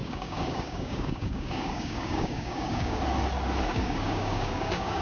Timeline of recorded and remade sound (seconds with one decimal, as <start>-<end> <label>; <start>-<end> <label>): 0.0-3.0 remade; 3.0-3.7 recorded; 3.7-5.0 remade